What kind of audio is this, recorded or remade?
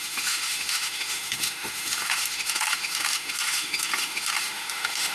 remade